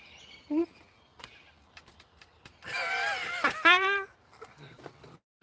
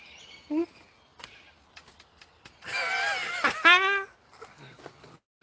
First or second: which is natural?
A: second